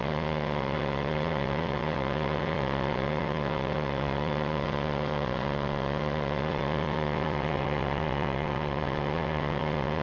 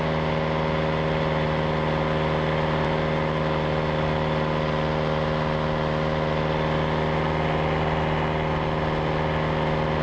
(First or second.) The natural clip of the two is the second